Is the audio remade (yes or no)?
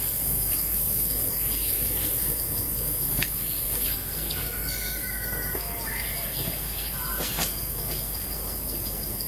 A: yes